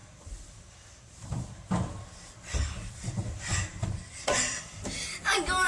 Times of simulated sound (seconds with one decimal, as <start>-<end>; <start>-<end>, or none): none